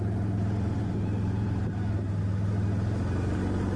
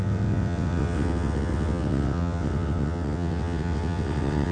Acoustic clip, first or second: first